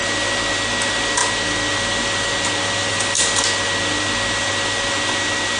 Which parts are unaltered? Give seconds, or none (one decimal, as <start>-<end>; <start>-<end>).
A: 0.0-5.6